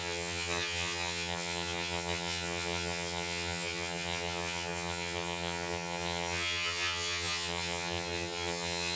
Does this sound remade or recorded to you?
remade